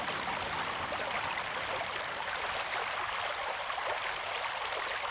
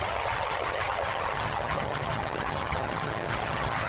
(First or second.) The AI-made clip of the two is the second